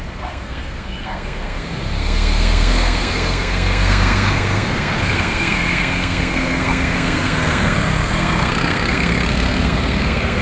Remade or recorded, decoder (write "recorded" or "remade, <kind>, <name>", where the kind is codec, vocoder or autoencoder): remade, codec, SNAC